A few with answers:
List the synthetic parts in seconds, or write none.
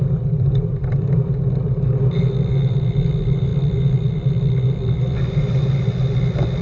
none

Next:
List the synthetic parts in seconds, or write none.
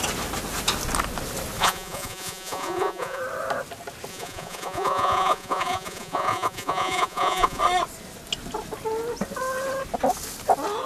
1.6-3.2 (vocoder, Vocos); 4.1-7.6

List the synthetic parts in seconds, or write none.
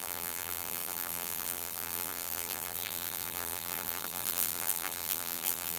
0.0-5.8 (vocoder, BigVGAN v2)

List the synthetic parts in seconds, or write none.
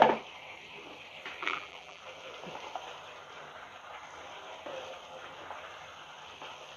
1.4-2.0 (vocoder, BigVGAN v2)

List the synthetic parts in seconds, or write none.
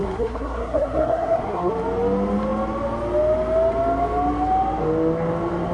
0.0-1.7 (codec, SNAC)